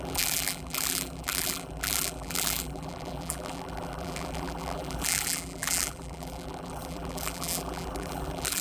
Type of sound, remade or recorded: remade